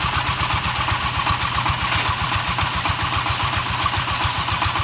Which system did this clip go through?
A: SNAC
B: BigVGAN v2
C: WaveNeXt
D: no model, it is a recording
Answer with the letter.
D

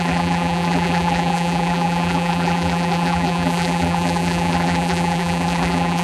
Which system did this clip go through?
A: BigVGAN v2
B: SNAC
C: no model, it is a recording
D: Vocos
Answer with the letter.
A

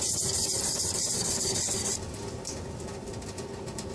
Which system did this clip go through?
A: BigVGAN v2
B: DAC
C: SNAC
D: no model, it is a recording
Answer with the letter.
A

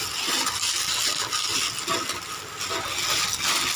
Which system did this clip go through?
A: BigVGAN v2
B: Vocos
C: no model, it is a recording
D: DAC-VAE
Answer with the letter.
C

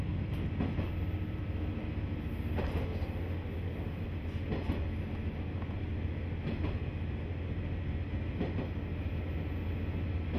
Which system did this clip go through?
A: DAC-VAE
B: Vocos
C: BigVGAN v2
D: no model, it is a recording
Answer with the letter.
D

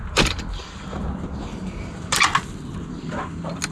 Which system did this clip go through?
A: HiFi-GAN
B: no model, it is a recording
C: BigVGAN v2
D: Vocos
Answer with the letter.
B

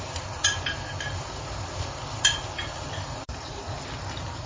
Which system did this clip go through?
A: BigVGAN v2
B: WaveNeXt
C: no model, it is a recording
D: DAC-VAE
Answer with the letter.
C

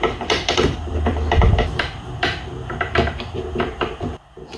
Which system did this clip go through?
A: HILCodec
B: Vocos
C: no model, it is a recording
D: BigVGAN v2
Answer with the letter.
D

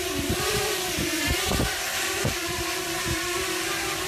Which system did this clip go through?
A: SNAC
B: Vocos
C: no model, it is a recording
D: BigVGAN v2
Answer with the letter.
D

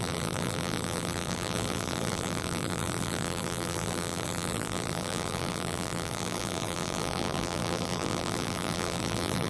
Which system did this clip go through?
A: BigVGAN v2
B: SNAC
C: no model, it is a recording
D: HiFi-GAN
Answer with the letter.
A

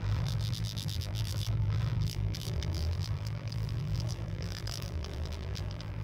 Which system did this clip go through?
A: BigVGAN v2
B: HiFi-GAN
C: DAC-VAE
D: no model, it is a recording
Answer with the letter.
A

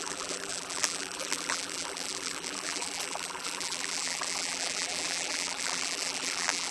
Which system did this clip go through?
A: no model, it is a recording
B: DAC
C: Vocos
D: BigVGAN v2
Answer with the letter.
D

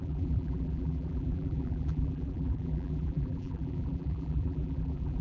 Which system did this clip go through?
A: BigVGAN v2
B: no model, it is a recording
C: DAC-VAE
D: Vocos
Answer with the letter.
A